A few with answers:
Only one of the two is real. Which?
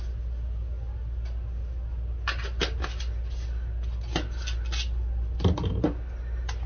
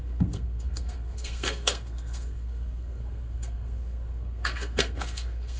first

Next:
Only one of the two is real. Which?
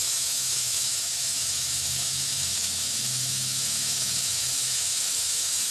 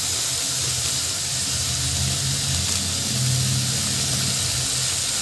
second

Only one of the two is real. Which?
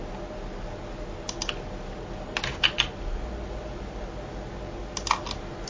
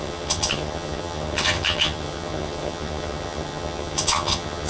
first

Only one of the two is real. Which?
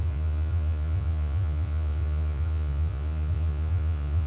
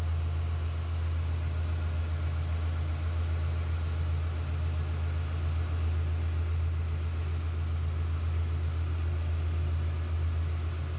second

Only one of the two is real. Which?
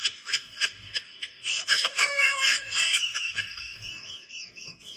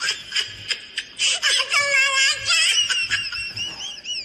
second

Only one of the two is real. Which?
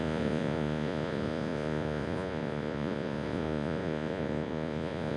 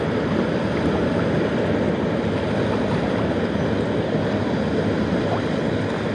second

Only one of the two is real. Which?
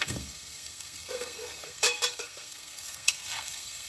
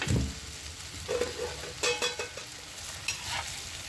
second